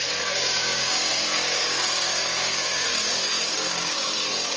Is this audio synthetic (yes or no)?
yes